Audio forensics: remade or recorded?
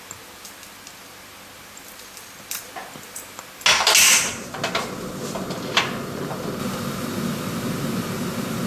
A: recorded